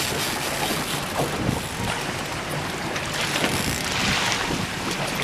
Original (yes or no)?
yes